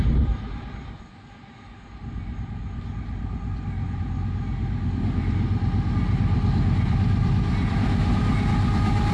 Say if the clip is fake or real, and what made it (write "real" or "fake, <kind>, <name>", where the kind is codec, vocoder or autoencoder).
real